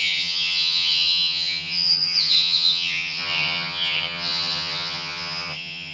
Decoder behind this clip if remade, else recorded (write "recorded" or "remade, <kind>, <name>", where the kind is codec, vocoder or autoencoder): remade, vocoder, HiFi-GAN